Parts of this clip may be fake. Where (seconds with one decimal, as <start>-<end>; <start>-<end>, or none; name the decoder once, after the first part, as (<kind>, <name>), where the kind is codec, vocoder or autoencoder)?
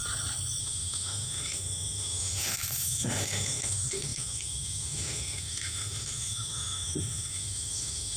0.6-8.2 (autoencoder, DAC-VAE)